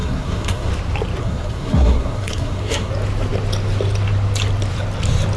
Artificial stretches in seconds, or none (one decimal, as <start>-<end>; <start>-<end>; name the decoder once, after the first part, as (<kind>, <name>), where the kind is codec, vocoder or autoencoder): 0.0-0.7 (codec, SNAC); 1.2-2.9